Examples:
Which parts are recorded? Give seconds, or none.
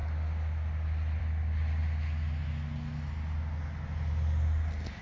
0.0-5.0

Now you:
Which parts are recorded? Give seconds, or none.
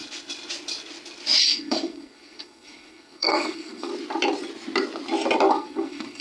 0.0-1.4; 3.9-5.5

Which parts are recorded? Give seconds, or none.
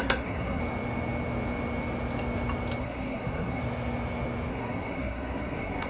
0.6-2.8; 3.6-4.5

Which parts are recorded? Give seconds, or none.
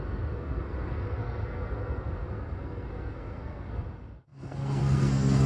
none